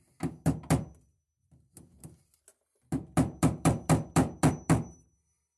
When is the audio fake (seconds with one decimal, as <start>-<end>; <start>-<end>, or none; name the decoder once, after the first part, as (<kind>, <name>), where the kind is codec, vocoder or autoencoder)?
none